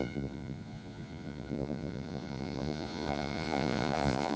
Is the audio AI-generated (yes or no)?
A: yes